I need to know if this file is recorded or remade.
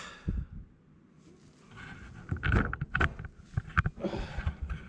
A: recorded